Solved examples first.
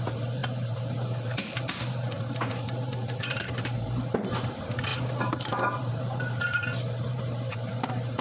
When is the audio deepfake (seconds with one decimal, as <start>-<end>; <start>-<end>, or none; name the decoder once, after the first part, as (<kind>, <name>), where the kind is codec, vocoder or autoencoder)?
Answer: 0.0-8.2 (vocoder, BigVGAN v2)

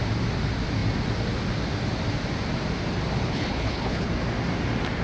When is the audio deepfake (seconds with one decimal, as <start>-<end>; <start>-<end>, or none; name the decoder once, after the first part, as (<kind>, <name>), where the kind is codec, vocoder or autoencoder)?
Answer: 3.3-4.1 (codec, HILCodec)

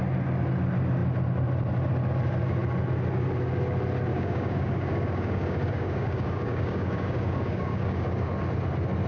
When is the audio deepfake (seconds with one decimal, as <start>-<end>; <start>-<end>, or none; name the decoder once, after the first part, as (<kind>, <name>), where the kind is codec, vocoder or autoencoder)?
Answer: 4.1-8.3 (codec, DAC)

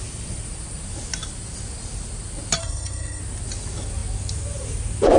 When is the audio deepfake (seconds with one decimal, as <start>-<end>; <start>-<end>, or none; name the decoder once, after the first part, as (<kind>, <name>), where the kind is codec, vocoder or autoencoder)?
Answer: 2.6-3.2 (codec, SNAC)

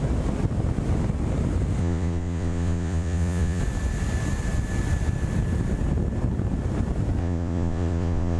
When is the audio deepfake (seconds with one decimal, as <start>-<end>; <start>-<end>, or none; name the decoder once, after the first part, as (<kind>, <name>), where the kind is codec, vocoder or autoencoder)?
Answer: 1.8-3.6 (vocoder, Vocos); 7.2-8.4

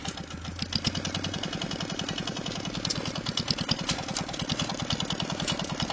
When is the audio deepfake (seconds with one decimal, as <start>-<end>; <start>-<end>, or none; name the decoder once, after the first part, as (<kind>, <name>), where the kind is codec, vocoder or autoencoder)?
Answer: none